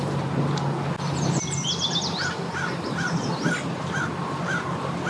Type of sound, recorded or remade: recorded